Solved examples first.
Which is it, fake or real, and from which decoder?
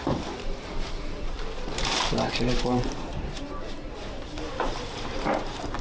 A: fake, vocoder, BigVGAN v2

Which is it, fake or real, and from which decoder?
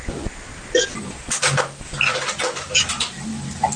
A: real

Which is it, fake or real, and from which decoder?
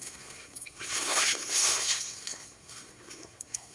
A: fake, codec, SNAC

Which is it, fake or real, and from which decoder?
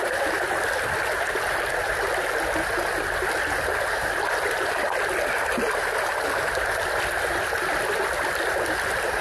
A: real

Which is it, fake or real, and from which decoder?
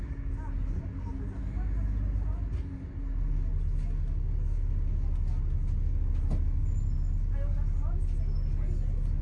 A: real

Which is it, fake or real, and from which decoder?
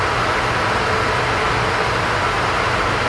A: real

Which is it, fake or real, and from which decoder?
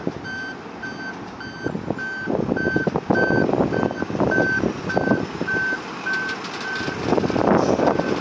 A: real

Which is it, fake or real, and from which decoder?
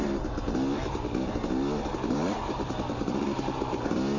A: real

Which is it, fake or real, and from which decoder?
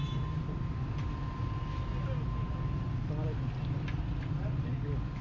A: real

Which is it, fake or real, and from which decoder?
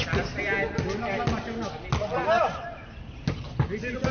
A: real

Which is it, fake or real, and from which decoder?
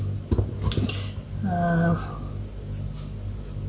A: real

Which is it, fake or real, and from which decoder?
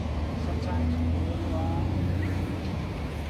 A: real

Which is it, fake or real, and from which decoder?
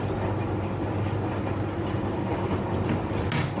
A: real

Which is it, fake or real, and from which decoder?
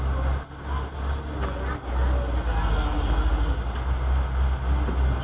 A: real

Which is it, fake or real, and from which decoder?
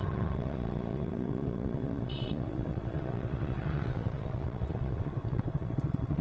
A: fake, vocoder, WaveNeXt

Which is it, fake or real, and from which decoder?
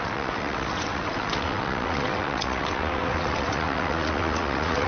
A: fake, vocoder, WaveNeXt